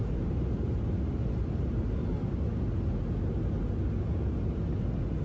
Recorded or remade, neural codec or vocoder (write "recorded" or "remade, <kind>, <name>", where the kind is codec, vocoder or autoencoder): recorded